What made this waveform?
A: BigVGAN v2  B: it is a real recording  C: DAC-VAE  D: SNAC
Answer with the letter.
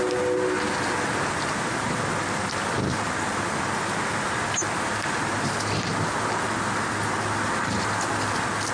B